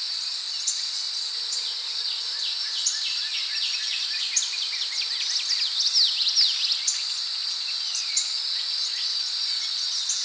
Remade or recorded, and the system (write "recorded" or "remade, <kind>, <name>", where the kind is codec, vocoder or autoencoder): recorded